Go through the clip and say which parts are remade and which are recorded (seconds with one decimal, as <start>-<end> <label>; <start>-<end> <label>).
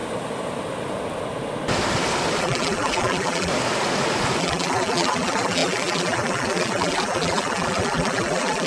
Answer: 0.0-2.4 recorded; 2.4-3.5 remade; 3.5-4.4 recorded; 4.4-8.7 remade